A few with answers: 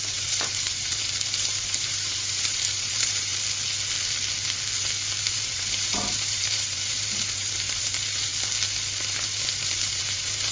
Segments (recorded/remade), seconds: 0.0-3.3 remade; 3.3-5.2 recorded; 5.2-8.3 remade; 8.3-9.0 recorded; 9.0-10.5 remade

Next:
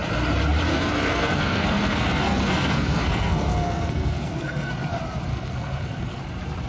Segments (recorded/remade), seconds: 0.0-0.7 recorded; 0.7-4.7 remade; 4.7-5.3 recorded; 5.3-6.2 remade; 6.2-6.7 recorded

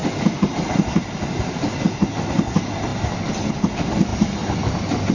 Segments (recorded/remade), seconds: 0.0-5.1 recorded

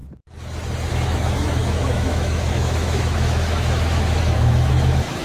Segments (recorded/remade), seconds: 0.0-0.9 recorded; 0.9-5.2 remade

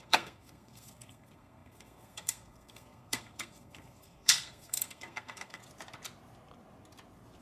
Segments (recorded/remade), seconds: 0.0-5.6 remade; 5.6-7.4 recorded

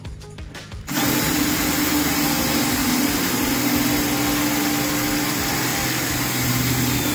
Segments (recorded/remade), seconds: 0.0-7.1 recorded

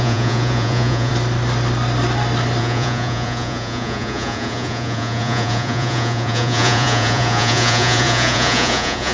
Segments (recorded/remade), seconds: 0.0-1.1 remade; 1.1-2.6 recorded; 2.6-9.1 remade

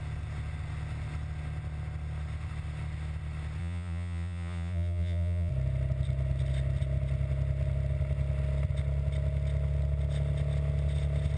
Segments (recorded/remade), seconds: 0.0-3.6 recorded; 3.6-5.5 remade; 5.5-11.4 recorded